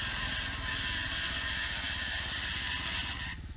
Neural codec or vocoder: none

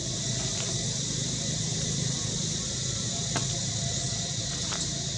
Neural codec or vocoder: none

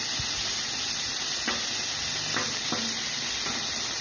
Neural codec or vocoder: none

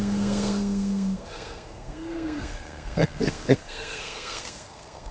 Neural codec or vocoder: codec, SNAC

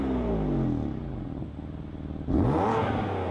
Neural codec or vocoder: none